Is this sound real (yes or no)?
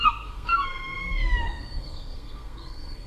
no